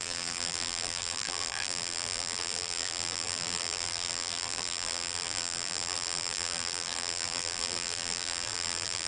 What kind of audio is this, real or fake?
fake